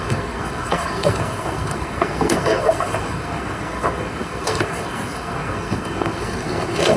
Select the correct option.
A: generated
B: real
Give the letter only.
A